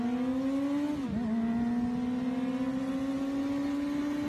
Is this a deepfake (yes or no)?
no